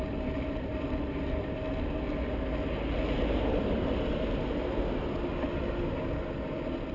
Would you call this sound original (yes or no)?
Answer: yes